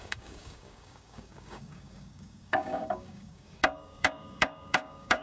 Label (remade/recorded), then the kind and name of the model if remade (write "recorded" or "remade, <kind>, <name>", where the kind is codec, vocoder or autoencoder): remade, codec, DAC